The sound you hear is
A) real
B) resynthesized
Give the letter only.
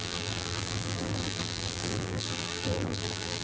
B